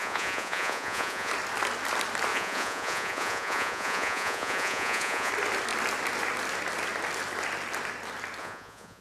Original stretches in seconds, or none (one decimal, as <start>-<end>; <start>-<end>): 1.3-2.3; 5.3-8.4